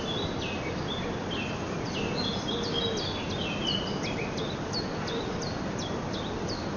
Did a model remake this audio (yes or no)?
no